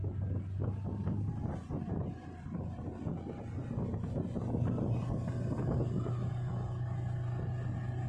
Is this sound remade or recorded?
recorded